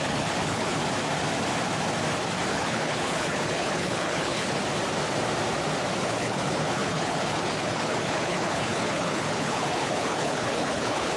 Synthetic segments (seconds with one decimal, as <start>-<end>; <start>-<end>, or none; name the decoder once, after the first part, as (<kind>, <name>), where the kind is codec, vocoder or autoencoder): 0.0-0.8 (codec, HILCodec); 2.5-4.6; 6.0-11.2